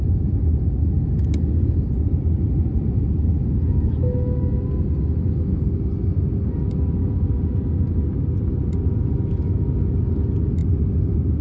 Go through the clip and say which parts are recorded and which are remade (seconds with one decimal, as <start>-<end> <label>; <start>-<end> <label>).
0.0-11.4 recorded